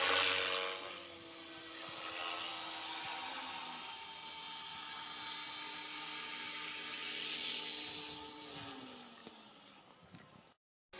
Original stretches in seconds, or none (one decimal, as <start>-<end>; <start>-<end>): 0.0-11.0